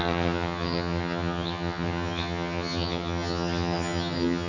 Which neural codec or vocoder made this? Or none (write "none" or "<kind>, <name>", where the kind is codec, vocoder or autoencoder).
vocoder, HiFi-GAN